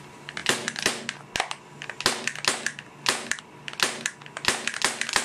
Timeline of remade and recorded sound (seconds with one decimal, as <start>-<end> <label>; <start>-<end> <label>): 0.0-5.2 recorded